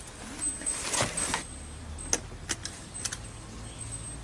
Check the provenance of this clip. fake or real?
real